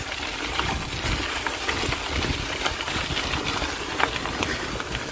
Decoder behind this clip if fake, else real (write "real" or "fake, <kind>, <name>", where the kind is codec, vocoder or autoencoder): real